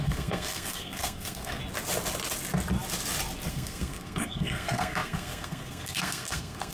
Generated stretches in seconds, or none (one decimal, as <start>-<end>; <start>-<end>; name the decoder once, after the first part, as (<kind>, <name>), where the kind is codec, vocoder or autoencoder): 0.0-1.6 (codec, SNAC); 3.5-6.7